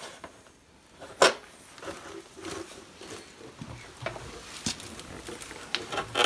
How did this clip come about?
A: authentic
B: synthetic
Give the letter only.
A